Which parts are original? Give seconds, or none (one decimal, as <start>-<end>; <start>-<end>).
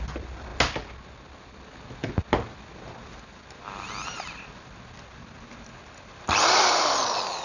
0.0-7.4